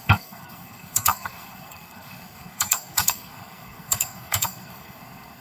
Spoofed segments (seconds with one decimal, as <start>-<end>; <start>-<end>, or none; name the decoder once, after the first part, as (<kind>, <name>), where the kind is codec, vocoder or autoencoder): 0.0-5.4 (codec, SNAC)

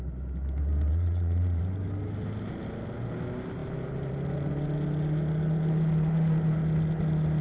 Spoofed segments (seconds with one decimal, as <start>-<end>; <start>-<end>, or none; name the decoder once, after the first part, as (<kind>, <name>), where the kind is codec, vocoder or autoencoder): 0.9-1.6 (vocoder, Vocos)

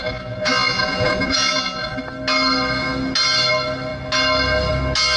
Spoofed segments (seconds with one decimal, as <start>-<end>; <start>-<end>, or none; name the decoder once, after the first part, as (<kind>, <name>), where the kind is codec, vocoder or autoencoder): 0.0-2.0 (vocoder, Vocos)

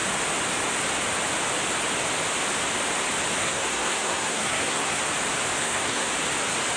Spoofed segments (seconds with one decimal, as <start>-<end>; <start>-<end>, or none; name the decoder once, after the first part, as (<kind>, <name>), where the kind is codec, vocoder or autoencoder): 3.4-5.0 (codec, SNAC); 5.6-6.1

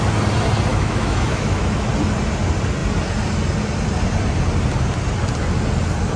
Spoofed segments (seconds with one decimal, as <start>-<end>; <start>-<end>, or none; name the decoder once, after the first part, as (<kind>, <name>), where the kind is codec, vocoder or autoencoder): 0.7-1.9 (autoencoder, DAC-VAE)

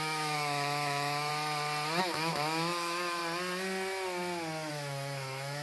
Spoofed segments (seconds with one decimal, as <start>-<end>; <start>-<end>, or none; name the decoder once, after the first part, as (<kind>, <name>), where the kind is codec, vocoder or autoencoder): 0.0-1.3 (autoencoder, DAC-VAE); 2.0-3.2; 4.7-5.6